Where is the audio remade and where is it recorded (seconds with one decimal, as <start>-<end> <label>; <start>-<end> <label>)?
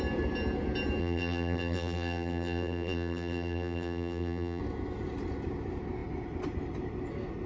0.0-1.0 recorded; 1.0-4.6 remade; 4.6-7.5 recorded